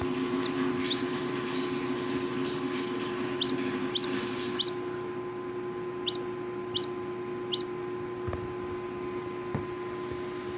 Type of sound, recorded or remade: recorded